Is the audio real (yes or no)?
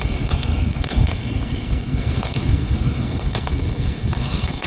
no